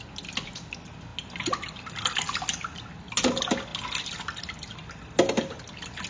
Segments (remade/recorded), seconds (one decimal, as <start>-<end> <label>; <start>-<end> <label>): 0.0-6.1 recorded